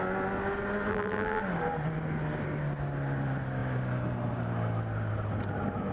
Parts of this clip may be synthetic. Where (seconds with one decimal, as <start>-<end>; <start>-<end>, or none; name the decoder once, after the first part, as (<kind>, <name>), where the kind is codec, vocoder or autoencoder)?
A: 0.9-1.4 (vocoder, BigVGAN v2)